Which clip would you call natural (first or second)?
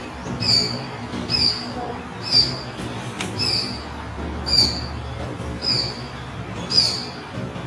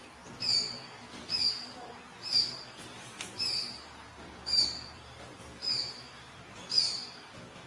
first